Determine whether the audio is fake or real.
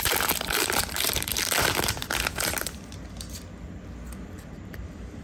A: fake